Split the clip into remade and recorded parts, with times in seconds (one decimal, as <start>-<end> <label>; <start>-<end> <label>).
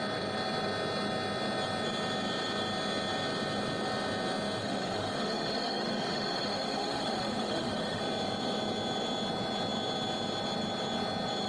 0.0-4.6 recorded; 4.6-8.0 remade; 8.0-11.5 recorded